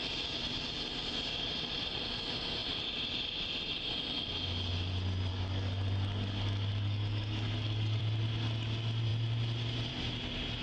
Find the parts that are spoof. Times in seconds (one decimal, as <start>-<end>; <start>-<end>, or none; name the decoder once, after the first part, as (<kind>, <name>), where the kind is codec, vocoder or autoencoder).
5.3-8.0 (codec, DAC)